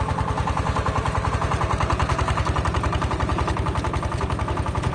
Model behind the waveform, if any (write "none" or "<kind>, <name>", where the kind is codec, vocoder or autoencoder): vocoder, BigVGAN v2